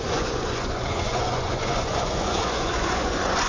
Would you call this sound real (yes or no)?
no